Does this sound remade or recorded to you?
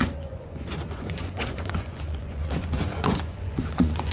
remade